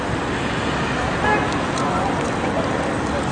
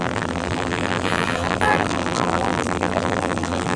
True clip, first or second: first